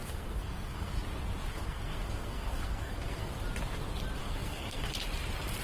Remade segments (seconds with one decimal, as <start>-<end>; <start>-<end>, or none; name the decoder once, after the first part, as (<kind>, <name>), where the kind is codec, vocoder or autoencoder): 0.0-1.0 (codec, SNAC); 1.5-3.3; 4.2-4.9